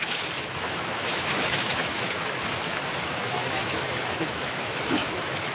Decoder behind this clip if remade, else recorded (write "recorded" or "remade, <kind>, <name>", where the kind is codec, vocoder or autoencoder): remade, autoencoder, DAC-VAE